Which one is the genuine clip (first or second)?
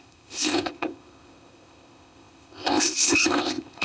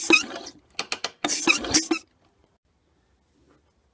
second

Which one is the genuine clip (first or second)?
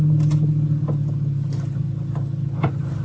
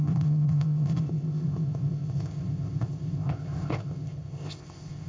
first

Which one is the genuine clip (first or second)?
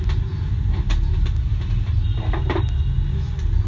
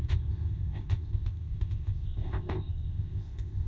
first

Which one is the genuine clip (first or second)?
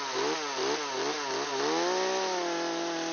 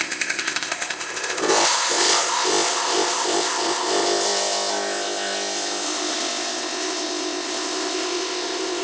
first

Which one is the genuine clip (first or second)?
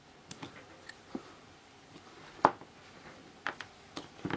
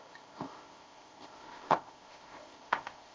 first